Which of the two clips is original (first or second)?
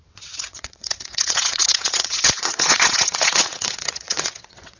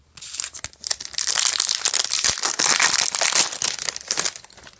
second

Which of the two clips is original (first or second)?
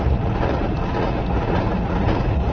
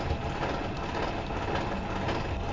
second